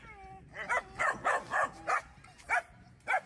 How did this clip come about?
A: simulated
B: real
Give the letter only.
B